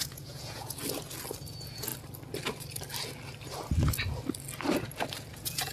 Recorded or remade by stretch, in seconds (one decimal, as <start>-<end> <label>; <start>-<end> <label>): 0.0-0.8 remade; 0.8-1.4 recorded; 1.4-1.9 remade; 1.9-5.3 recorded; 5.3-5.7 remade